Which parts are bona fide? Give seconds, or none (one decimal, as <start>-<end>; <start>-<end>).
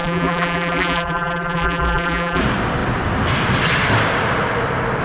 2.4-5.0